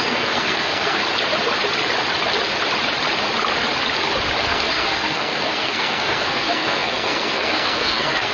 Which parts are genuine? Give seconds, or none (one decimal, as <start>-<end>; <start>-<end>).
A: 1.0-4.4